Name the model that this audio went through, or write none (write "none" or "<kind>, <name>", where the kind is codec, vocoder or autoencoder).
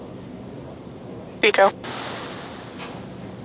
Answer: none